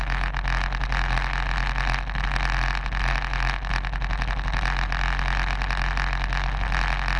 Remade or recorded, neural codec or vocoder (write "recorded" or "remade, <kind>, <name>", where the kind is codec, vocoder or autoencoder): recorded